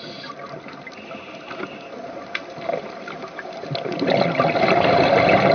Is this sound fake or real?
real